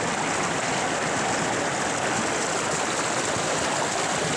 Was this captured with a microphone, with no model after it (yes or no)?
yes